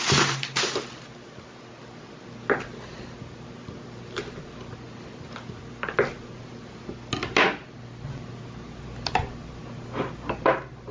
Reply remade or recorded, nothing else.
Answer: recorded